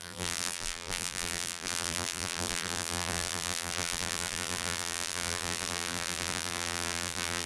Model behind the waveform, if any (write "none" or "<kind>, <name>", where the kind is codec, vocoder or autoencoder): vocoder, BigVGAN v2